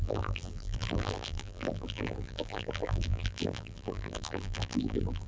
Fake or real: fake